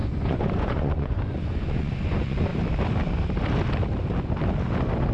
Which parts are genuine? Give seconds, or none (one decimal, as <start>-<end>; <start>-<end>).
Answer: 2.5-5.1